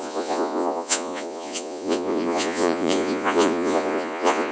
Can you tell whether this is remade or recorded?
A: remade